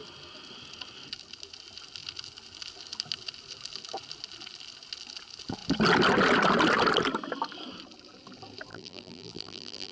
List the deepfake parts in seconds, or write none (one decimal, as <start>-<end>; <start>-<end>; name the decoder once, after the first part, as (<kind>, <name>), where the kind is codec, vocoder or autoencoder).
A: 8.7-9.9 (vocoder, BigVGAN v2)